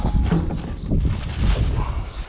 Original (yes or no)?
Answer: yes